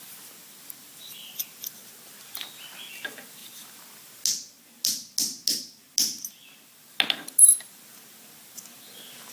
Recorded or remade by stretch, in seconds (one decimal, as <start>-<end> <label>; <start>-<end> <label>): 0.0-9.3 recorded